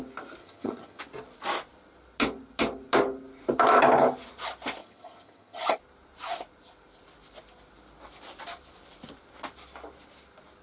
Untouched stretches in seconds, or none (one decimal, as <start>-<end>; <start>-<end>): 0.0-0.4; 1.0-4.8; 5.8-10.6